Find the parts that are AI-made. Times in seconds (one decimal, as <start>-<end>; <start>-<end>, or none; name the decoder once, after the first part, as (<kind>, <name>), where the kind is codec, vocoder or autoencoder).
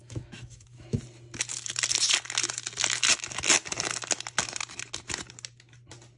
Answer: 0.0-1.0 (autoencoder, DAC-VAE)